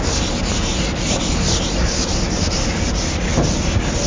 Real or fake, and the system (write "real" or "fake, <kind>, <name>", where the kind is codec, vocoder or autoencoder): real